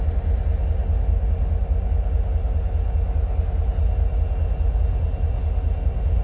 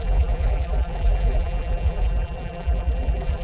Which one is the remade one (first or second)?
second